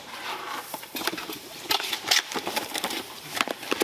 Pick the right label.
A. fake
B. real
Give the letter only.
A